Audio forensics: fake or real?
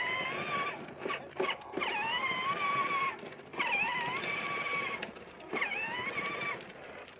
real